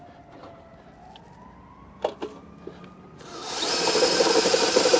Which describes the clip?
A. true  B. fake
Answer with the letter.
A